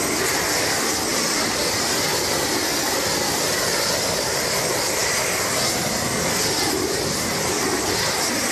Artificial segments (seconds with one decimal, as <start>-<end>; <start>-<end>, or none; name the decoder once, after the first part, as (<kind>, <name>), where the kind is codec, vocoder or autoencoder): 1.1-1.6 (vocoder, BigVGAN v2)